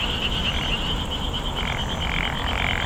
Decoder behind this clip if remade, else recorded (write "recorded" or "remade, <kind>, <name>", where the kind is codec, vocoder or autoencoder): recorded